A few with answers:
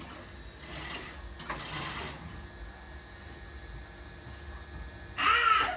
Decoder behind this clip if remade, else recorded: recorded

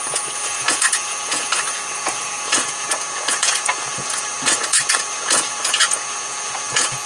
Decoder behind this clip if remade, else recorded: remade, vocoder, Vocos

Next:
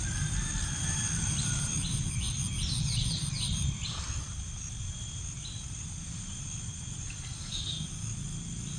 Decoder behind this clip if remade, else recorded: recorded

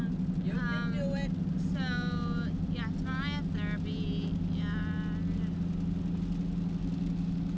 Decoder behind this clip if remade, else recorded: recorded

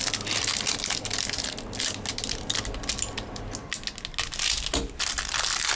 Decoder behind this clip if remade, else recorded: recorded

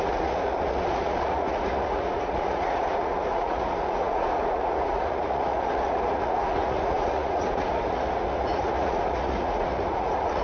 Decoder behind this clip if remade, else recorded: remade, vocoder, Vocos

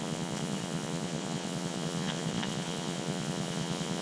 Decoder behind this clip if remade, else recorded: remade, vocoder, Vocos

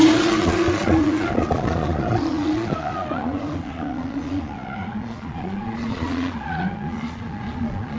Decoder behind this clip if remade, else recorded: remade, vocoder, Vocos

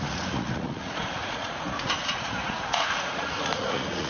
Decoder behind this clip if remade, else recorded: remade, vocoder, Vocos